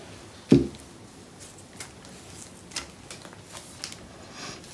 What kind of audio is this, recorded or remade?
recorded